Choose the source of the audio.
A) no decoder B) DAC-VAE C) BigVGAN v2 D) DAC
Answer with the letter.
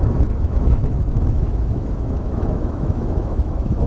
B